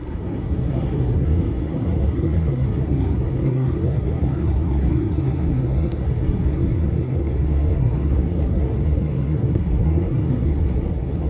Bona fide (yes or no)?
no